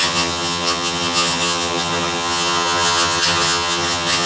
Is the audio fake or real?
fake